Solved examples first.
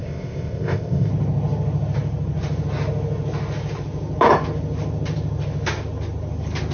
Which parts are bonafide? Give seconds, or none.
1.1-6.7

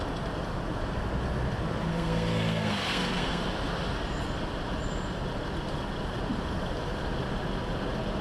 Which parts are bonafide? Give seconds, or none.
0.0-1.9; 3.4-8.2

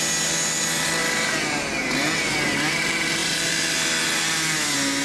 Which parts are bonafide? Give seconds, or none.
0.0-5.0

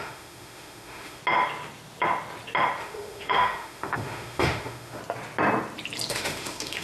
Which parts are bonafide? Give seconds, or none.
1.2-2.8; 5.0-6.1

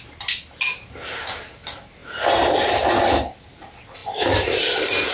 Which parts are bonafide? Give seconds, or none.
0.0-2.0; 2.9-5.1

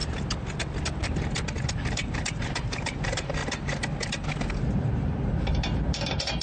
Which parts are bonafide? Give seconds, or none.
0.0-1.7; 3.4-4.5

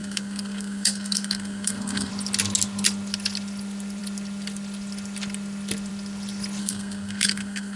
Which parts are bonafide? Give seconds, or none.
2.1-6.6